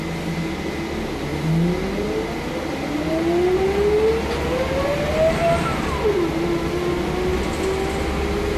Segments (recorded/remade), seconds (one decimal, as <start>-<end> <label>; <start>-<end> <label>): 0.0-8.6 recorded